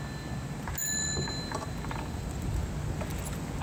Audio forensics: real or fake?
real